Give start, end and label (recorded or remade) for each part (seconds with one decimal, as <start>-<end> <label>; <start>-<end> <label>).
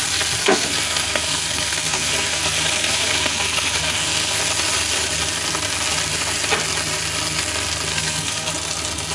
0.0-0.4 recorded; 0.4-4.4 remade; 4.4-7.9 recorded; 7.9-8.5 remade; 8.5-9.1 recorded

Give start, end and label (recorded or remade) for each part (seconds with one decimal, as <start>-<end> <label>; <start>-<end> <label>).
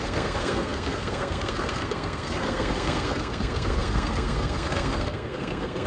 0.0-5.9 remade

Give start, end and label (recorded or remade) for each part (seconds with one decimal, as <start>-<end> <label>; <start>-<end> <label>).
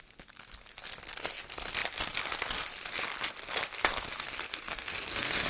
0.0-4.5 recorded; 4.5-5.5 remade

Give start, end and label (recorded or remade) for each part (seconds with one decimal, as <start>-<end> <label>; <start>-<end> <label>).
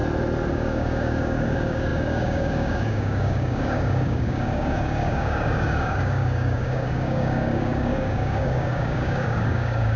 0.0-0.5 recorded; 0.5-10.0 remade